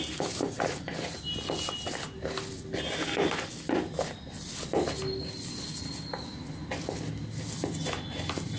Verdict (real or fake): real